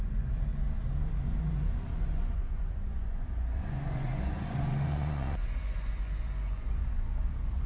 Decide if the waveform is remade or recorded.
remade